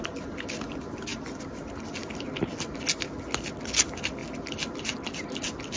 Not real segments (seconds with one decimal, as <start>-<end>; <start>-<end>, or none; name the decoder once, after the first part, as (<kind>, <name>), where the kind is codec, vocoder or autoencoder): none